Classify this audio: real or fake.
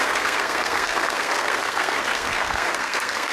fake